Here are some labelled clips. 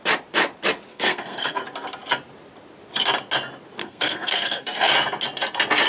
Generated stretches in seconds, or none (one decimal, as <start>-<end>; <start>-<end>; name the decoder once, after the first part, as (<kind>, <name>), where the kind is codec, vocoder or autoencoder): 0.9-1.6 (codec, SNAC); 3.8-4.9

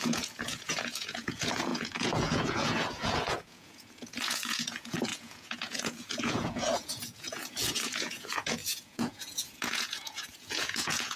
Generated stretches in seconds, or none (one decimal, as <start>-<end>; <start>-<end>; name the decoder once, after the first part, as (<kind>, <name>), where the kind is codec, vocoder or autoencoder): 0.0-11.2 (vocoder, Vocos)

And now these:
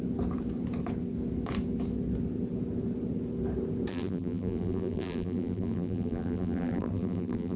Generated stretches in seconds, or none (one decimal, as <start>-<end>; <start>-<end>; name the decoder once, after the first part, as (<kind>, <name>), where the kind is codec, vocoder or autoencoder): 3.9-7.6 (vocoder, BigVGAN v2)